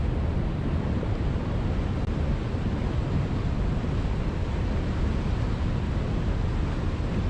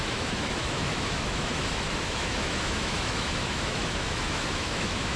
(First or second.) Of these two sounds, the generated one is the second